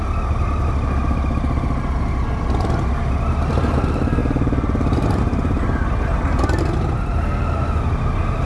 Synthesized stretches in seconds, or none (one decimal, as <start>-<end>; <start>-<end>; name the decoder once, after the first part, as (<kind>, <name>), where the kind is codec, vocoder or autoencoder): none